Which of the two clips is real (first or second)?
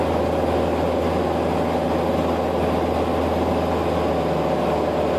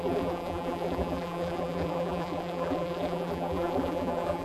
first